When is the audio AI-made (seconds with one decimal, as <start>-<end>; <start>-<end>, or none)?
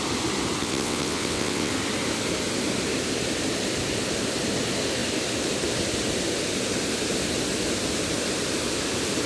0.6-1.7